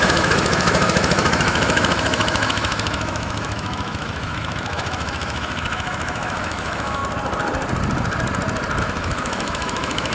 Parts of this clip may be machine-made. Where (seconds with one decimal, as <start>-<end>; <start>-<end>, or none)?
0.0-7.0; 8.8-10.1